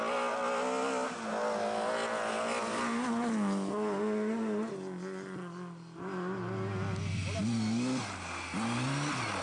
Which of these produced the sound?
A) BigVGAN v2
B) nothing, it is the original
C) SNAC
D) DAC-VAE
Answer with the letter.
B